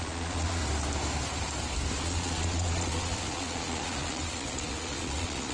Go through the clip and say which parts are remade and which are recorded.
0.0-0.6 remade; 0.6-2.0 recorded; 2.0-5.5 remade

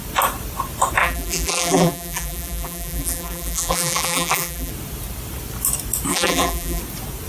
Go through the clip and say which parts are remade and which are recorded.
0.0-1.0 recorded; 1.0-4.7 remade; 4.7-6.1 recorded; 6.1-6.8 remade; 6.8-7.3 recorded

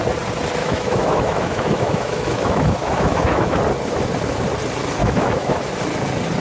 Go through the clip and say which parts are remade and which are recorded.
0.0-0.6 recorded; 0.6-3.6 remade; 3.6-5.0 recorded; 5.0-5.6 remade; 5.6-6.4 recorded

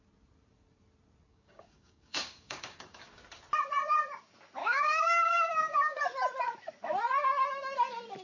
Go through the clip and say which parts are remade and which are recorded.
0.0-1.3 recorded; 1.3-3.2 remade; 3.2-4.6 recorded; 4.6-6.0 remade; 6.0-8.2 recorded

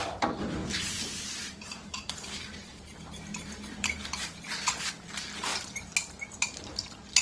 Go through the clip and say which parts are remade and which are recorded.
0.0-0.6 recorded; 0.6-4.9 remade; 4.9-7.2 recorded

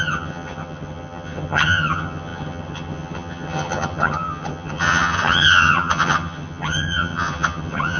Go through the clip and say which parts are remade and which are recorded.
0.0-8.0 remade